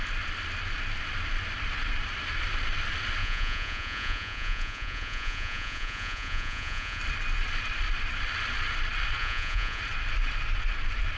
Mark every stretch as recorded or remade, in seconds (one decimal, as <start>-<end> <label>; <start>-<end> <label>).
0.0-3.2 recorded; 3.2-7.0 remade; 7.0-9.2 recorded; 9.2-9.8 remade; 9.8-11.2 recorded